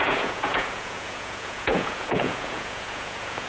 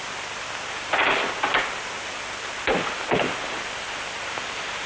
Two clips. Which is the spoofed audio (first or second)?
first